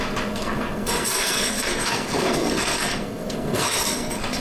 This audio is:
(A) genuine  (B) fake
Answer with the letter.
B